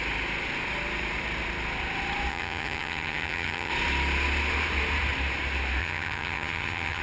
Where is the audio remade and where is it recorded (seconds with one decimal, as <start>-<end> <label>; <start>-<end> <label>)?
0.0-2.3 recorded; 2.3-3.7 remade; 3.7-5.8 recorded; 5.8-7.0 remade